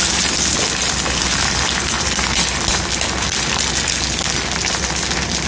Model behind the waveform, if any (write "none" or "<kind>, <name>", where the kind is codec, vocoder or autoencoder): none